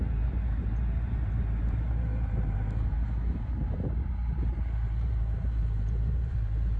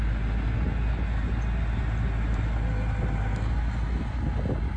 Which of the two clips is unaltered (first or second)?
second